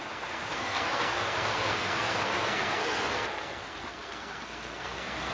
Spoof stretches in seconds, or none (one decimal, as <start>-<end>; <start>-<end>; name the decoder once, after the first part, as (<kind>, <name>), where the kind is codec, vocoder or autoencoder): 0.0-5.3 (codec, SNAC)